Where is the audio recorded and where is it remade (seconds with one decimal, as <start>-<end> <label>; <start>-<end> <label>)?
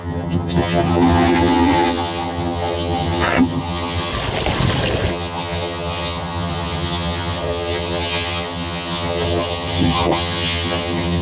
0.0-4.1 remade; 4.1-5.1 recorded; 5.1-11.2 remade